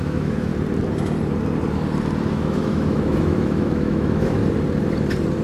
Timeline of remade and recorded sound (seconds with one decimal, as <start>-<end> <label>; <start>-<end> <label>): 0.0-0.5 remade; 0.5-2.3 recorded; 2.3-4.4 remade; 4.4-5.4 recorded